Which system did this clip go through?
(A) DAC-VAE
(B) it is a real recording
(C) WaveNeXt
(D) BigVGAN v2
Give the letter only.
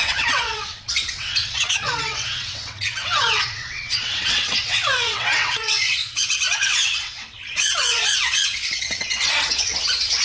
C